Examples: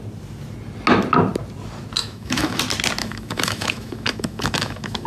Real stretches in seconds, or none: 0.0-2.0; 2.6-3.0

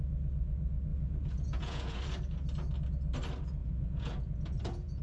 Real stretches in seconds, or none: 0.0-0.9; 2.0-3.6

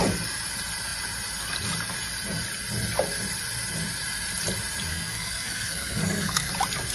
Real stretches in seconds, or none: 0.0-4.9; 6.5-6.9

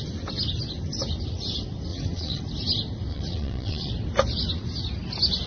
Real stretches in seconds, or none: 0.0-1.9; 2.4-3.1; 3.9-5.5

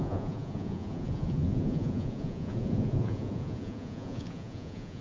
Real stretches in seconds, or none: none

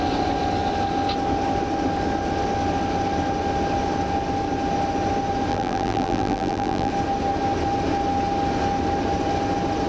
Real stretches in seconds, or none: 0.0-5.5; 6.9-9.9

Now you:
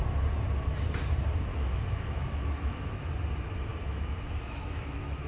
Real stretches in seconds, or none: 0.0-1.5; 3.1-3.7

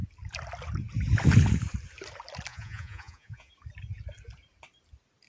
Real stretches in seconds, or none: 0.0-2.5; 3.5-5.3